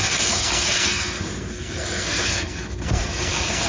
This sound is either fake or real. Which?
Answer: fake